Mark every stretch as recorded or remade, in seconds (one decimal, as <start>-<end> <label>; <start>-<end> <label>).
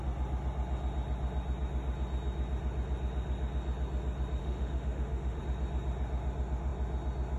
0.0-4.4 recorded; 4.4-5.4 remade; 5.4-7.4 recorded